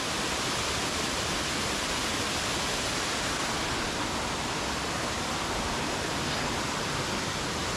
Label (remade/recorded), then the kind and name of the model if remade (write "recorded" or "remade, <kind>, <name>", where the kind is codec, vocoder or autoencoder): recorded